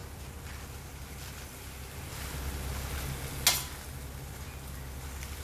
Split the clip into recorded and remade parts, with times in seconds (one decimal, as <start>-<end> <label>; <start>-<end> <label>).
0.0-5.4 recorded